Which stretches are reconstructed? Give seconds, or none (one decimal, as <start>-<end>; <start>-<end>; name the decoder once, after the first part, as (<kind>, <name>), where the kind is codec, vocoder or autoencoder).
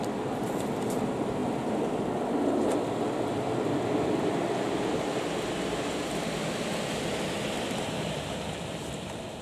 none